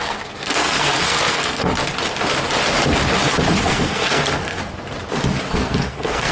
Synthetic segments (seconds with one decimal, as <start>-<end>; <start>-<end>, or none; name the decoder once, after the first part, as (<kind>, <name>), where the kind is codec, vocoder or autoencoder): 0.0-1.7 (codec, SNAC); 3.6-4.6; 5.4-6.3